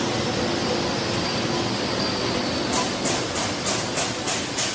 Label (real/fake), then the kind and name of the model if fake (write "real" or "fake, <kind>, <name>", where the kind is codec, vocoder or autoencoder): real